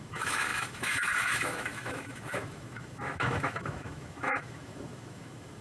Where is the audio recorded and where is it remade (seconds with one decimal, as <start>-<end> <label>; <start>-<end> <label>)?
0.0-5.6 remade